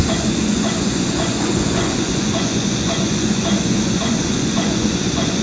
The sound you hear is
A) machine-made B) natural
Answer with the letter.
A